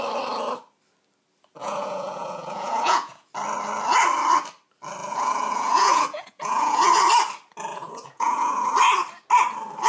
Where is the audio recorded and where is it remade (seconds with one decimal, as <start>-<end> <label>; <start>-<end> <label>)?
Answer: 0.0-1.6 recorded; 1.6-3.3 remade; 3.3-5.0 recorded; 5.0-7.0 remade; 7.0-7.7 recorded; 7.7-8.7 remade; 8.7-9.9 recorded